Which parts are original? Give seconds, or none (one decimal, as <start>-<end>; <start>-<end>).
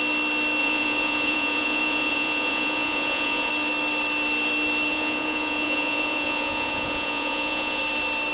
0.0-0.6; 3.5-4.9; 7.8-8.3